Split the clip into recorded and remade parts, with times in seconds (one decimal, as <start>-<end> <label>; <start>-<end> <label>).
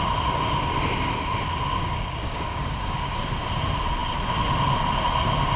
0.0-1.8 recorded; 1.8-3.2 remade; 3.2-5.6 recorded